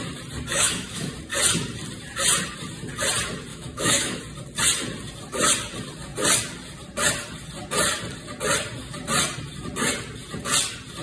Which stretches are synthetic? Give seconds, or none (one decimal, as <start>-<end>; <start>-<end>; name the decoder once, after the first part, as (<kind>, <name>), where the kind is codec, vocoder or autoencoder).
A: 0.5-1.1 (autoencoder, DAC-VAE); 3.5-4.2